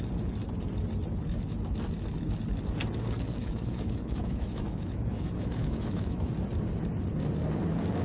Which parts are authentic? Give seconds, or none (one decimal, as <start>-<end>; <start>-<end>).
0.0-3.4; 6.3-8.0